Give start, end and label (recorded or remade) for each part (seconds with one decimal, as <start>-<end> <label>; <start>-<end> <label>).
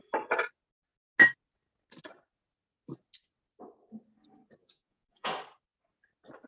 0.0-4.6 recorded; 4.6-5.3 remade; 5.3-6.5 recorded